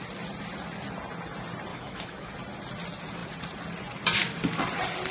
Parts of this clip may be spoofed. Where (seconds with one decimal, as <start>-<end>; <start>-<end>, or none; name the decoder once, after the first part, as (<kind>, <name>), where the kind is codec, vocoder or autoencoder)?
1.7-2.3 (autoencoder, DAC-VAE)